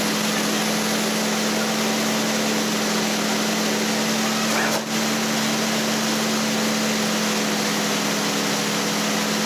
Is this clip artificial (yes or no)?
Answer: no